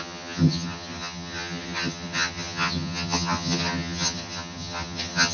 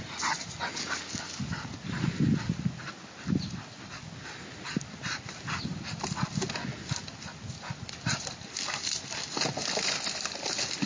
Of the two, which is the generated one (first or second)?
first